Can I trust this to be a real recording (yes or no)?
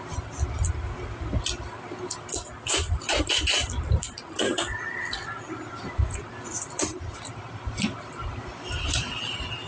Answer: no